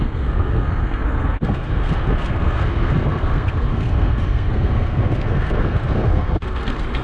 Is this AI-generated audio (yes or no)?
yes